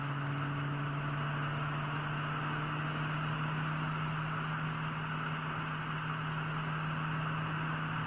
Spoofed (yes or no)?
no